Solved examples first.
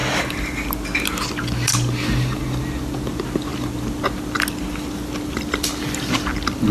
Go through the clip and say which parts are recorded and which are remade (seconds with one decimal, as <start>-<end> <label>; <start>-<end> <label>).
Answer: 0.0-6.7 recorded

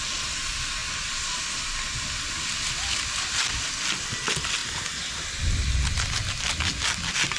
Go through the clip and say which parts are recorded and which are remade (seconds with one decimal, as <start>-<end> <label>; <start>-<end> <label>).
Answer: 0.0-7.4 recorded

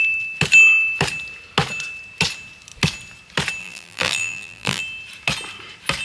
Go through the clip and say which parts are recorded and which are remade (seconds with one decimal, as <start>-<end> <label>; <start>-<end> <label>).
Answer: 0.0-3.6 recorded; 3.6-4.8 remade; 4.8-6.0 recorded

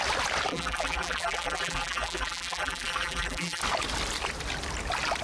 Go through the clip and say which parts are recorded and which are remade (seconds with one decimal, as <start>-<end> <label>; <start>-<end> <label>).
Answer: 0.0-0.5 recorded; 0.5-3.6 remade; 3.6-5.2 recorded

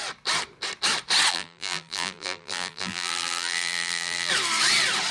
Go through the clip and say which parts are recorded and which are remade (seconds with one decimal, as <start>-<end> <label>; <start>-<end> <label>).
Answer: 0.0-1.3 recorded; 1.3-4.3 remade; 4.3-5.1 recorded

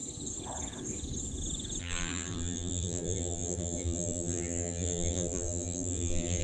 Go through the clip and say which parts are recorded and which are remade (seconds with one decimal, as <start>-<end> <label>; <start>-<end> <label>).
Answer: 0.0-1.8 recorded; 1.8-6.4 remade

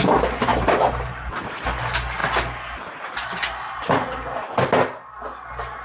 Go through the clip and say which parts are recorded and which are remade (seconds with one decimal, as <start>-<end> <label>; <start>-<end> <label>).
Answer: 0.0-0.5 recorded; 0.5-1.5 remade; 1.5-5.8 recorded